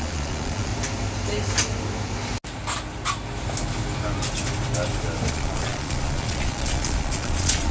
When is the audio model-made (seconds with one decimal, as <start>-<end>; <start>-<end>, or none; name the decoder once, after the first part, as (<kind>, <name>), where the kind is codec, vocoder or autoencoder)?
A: 0.0-0.7 (vocoder, Vocos); 5.3-7.7